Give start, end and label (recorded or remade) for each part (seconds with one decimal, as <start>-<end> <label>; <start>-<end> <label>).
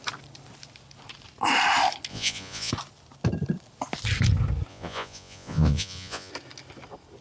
0.0-2.1 recorded; 2.1-2.7 remade; 2.7-4.7 recorded; 4.7-6.3 remade; 6.3-7.2 recorded